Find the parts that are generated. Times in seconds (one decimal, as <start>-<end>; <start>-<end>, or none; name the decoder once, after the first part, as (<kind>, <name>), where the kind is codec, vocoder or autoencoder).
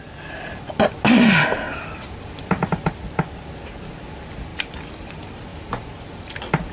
1.7-2.9 (vocoder, BigVGAN v2); 4.5-5.1; 5.5-6.2